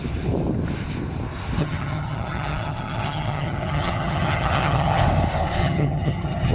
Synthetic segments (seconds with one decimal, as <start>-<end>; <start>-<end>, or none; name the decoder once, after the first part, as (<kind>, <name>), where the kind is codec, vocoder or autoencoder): 1.6-5.0 (vocoder, HiFi-GAN); 5.6-6.5